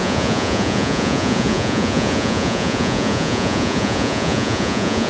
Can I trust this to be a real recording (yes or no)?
no